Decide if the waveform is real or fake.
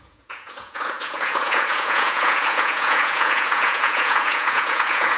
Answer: fake